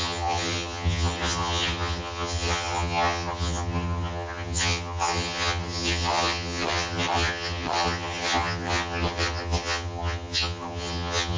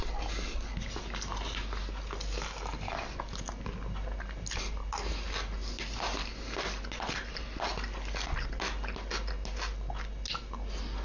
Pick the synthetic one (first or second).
first